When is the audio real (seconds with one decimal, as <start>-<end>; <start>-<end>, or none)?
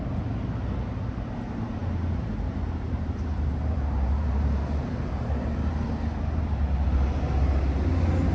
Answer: 0.0-1.8; 5.7-8.3